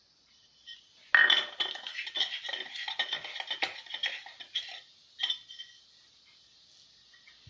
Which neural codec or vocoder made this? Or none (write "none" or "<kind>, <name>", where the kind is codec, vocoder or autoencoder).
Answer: none